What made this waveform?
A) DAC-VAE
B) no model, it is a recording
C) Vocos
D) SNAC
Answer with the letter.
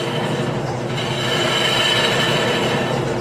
B